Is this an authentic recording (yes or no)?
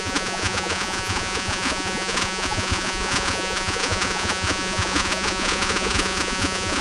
no